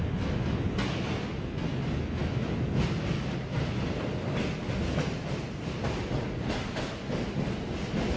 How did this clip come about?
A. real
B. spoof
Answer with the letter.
A